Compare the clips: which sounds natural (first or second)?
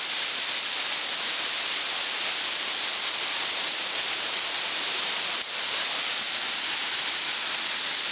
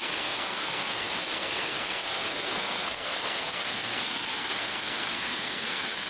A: first